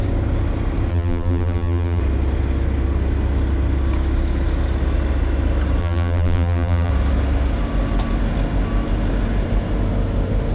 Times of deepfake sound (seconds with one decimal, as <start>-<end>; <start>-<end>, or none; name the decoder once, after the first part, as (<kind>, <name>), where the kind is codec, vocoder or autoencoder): 0.9-2.0 (vocoder, BigVGAN v2); 5.8-6.9